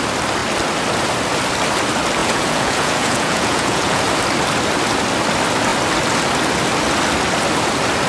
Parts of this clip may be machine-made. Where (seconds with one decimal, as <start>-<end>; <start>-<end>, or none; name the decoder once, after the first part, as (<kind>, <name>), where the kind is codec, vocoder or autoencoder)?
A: 2.2-4.0 (vocoder, Vocos)